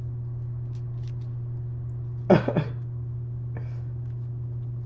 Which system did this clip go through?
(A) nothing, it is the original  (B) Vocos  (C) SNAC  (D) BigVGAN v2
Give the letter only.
A